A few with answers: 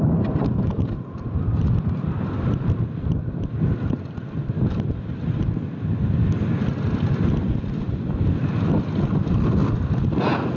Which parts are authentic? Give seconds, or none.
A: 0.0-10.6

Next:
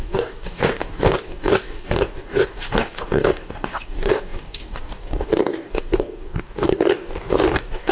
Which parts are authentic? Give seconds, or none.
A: none